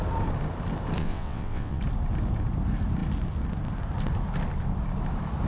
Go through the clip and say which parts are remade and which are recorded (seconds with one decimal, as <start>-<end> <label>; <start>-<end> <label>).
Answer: 0.0-1.0 recorded; 1.0-1.8 remade; 1.8-5.5 recorded